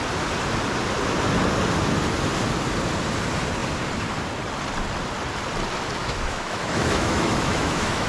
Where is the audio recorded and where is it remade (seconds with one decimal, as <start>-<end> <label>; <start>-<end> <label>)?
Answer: 0.0-6.0 recorded; 6.0-8.1 remade